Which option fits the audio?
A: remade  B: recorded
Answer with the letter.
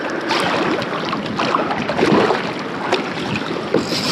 B